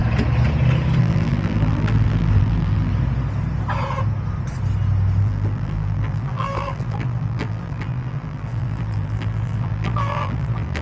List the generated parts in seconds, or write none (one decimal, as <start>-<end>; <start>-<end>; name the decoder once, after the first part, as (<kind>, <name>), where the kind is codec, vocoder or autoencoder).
1.0-2.9 (vocoder, BigVGAN v2); 5.2-10.8